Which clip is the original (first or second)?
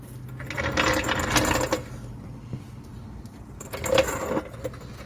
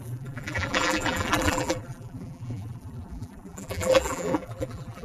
first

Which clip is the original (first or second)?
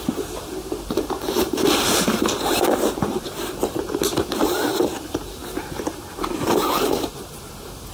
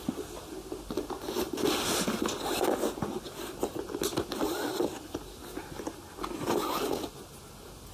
second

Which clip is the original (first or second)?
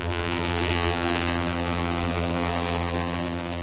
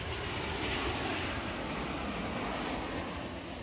second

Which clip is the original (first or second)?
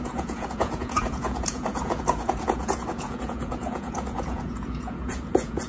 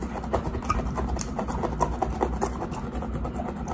second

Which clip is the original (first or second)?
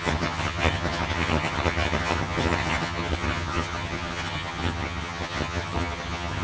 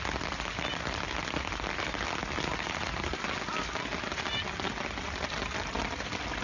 second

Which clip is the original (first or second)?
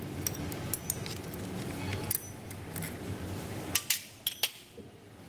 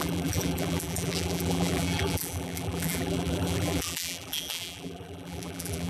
first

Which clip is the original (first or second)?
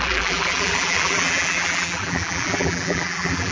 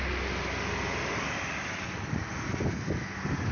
second